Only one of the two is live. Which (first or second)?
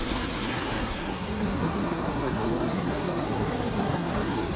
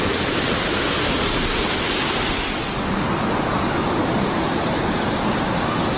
second